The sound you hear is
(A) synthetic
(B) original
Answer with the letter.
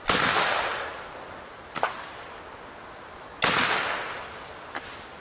B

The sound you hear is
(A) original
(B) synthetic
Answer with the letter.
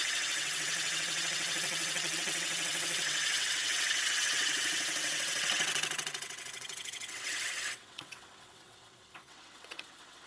B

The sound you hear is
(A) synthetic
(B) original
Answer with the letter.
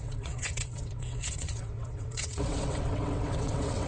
A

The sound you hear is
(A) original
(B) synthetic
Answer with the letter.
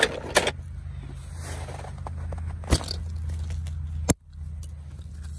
A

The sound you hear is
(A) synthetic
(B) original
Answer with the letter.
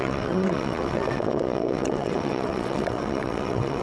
A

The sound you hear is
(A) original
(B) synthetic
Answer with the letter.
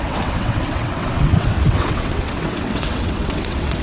B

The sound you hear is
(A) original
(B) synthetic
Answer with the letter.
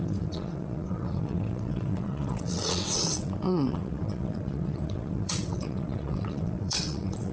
B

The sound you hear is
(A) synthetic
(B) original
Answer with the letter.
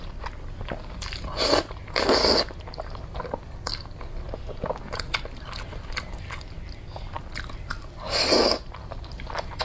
B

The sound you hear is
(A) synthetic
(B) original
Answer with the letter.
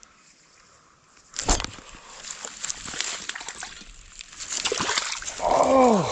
B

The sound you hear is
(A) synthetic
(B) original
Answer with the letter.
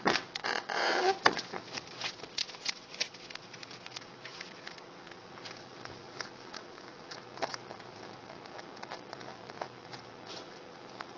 A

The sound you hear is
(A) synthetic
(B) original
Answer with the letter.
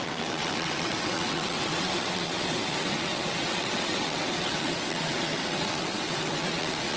A